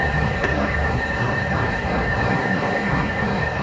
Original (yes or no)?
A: no